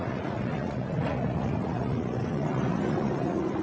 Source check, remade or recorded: remade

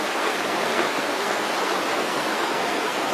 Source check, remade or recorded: remade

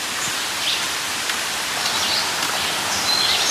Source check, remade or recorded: recorded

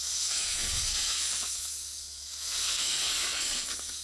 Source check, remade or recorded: remade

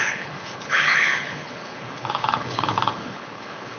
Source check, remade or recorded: remade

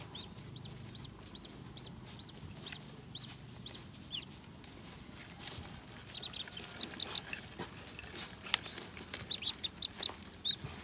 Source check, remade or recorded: recorded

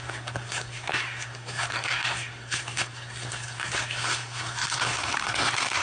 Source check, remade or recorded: remade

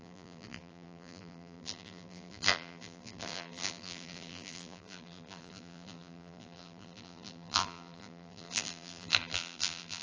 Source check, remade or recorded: remade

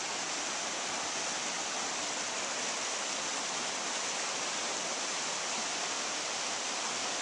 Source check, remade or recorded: recorded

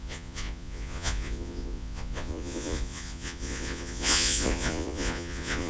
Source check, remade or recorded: remade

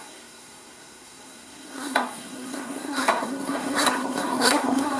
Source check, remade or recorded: remade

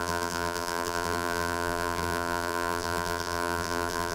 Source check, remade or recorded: remade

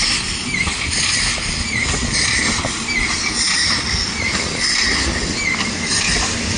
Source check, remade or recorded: recorded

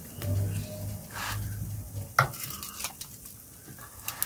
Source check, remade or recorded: recorded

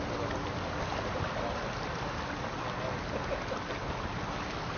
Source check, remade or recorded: recorded